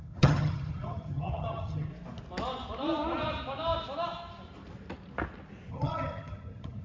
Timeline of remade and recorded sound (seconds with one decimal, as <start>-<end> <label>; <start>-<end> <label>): 0.0-1.9 remade; 1.9-5.7 recorded; 5.7-6.8 remade

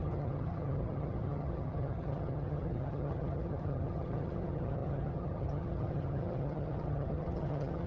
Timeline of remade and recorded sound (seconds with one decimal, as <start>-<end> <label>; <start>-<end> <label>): 0.0-7.9 remade

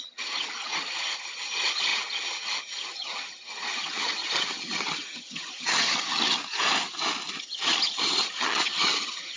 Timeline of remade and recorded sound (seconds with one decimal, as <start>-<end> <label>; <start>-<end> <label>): 0.0-6.4 remade; 6.4-7.4 recorded; 7.4-9.4 remade